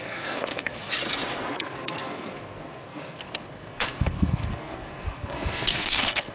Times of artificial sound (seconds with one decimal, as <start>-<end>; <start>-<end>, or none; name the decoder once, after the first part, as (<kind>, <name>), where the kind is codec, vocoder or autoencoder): 0.0-0.9 (codec, SNAC); 1.5-6.3